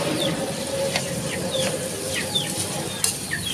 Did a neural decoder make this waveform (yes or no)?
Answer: yes